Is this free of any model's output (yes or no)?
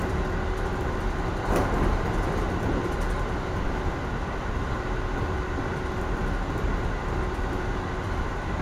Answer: yes